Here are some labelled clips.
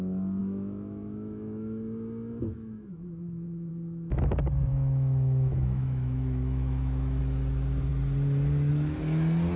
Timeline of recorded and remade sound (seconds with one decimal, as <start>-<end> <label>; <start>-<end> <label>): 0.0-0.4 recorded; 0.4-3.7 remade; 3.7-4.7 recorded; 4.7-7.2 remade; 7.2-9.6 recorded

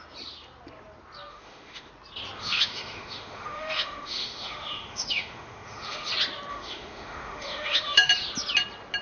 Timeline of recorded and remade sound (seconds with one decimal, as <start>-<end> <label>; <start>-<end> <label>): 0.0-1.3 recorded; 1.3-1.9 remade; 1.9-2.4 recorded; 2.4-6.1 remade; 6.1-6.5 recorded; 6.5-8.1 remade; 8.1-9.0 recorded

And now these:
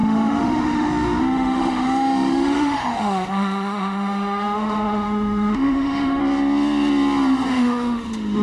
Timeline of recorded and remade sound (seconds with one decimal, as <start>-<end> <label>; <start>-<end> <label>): 0.0-6.2 remade; 6.2-7.5 recorded; 7.5-8.4 remade

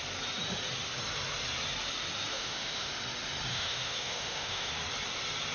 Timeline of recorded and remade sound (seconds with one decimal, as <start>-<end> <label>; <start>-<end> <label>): 0.0-2.3 recorded; 2.3-2.9 remade; 2.9-3.5 recorded; 3.5-4.7 remade; 4.7-5.5 recorded

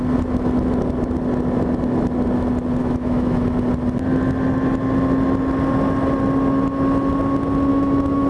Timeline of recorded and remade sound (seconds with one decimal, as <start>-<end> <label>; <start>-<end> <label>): 0.0-2.8 recorded; 2.8-3.4 remade; 3.4-7.7 recorded; 7.7-8.3 remade

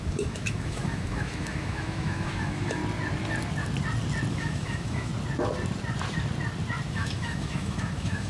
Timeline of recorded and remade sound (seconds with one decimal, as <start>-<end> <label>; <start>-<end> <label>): 0.0-2.8 remade; 2.8-4.3 recorded; 4.3-5.1 remade; 5.1-6.9 recorded; 6.9-8.3 remade

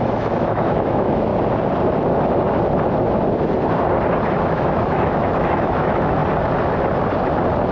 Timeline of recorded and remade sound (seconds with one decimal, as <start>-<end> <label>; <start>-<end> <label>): 0.0-1.3 remade; 1.3-4.4 recorded; 4.4-6.2 remade; 6.2-7.7 recorded